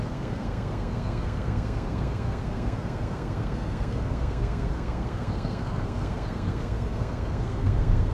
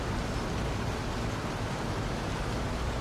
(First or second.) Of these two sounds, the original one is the second